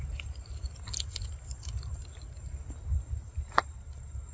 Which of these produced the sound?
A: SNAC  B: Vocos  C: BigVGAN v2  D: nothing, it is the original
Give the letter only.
D